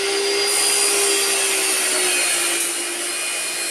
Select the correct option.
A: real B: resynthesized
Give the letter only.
A